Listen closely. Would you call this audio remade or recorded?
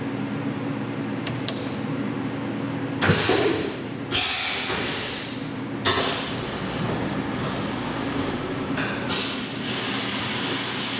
recorded